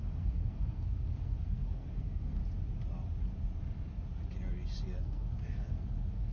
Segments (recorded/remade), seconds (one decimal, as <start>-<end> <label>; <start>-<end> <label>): 0.0-2.4 remade; 2.4-5.0 recorded; 5.0-6.3 remade